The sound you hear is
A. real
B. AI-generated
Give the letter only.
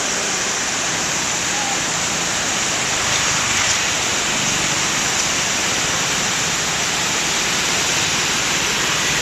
B